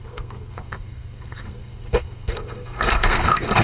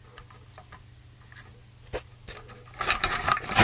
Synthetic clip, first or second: first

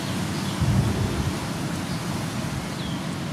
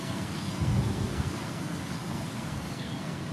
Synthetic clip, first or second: second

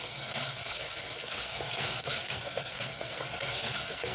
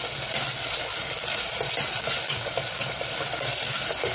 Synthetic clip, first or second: first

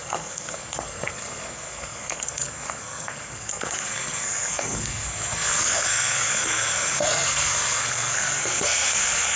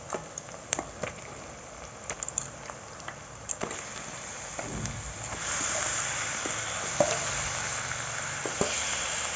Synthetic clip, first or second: first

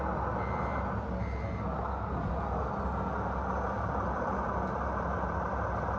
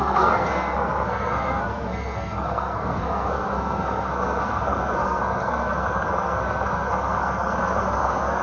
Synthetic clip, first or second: second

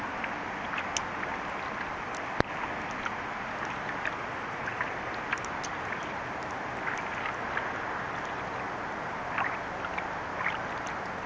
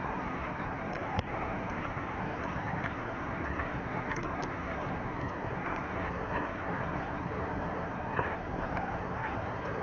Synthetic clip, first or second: second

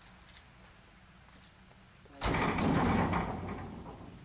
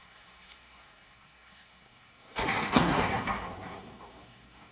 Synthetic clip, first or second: second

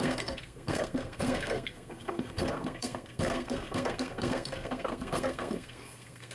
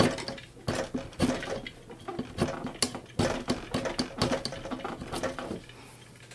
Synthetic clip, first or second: first